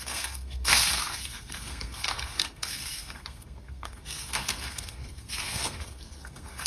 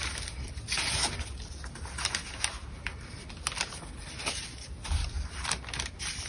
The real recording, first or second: second